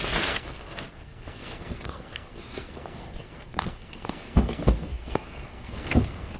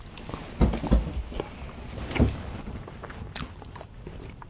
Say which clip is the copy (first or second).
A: first